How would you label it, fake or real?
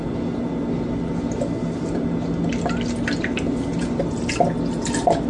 real